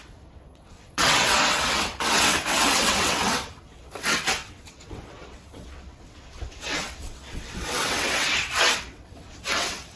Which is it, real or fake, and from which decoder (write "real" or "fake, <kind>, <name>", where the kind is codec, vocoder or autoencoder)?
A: fake, vocoder, WaveNeXt